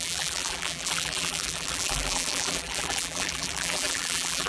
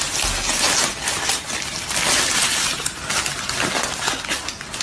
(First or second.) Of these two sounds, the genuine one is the second